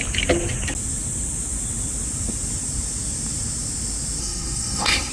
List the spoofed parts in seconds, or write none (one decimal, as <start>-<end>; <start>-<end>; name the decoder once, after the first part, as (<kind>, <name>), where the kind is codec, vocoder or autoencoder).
4.2-5.1 (codec, SNAC)